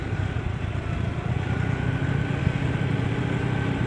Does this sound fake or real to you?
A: real